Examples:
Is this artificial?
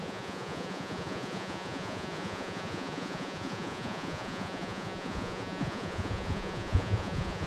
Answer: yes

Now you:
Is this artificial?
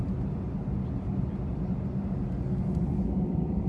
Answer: no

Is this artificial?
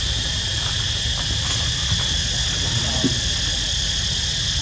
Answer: no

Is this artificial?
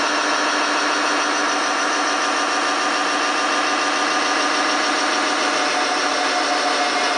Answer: no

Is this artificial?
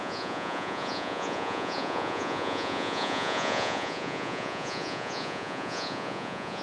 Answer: yes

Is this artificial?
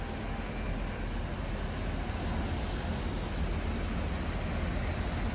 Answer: no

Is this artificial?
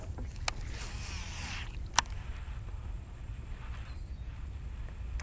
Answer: no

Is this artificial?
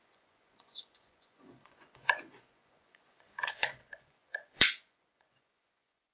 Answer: yes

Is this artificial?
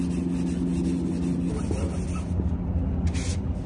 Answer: no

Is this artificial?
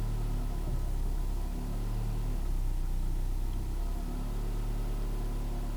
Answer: no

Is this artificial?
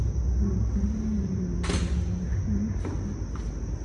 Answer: no